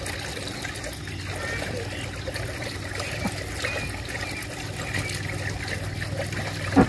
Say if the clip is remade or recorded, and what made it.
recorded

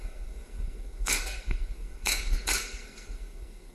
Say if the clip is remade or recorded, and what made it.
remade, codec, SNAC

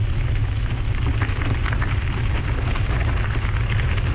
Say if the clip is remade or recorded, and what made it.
recorded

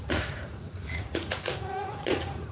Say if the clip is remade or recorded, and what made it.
remade, vocoder, Vocos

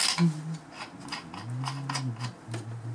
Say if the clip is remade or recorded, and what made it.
recorded